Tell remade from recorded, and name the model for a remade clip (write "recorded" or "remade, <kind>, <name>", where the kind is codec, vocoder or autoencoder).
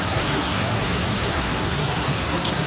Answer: remade, codec, SNAC